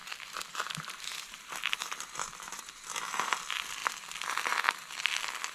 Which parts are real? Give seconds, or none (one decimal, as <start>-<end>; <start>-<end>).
3.3-5.5